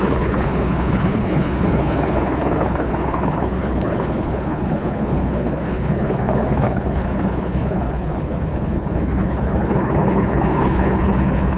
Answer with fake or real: fake